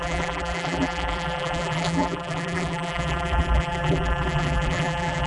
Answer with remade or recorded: remade